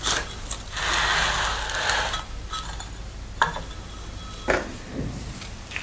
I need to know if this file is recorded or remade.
recorded